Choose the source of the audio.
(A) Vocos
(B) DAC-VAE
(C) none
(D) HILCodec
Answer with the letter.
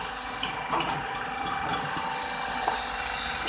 C